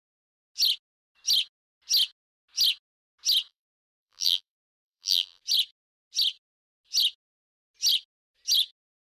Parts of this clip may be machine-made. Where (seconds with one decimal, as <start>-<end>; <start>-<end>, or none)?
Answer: 3.5-5.4